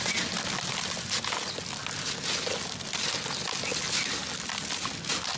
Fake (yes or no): no